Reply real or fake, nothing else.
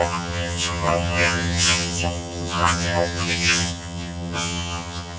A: fake